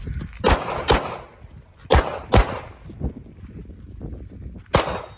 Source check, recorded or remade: recorded